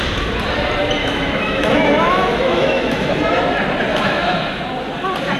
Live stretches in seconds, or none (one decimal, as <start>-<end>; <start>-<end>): 0.0-1.0; 3.1-3.9; 4.6-5.4